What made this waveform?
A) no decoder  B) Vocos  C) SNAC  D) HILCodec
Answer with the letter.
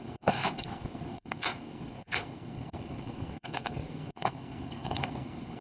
C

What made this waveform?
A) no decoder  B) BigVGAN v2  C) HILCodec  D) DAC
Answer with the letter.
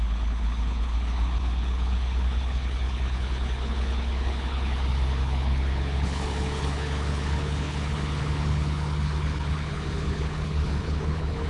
C